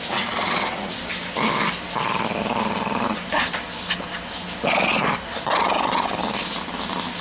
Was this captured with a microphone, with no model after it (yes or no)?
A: yes